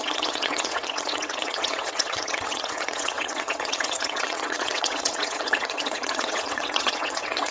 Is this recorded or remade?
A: remade